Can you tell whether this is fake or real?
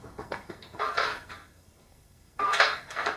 fake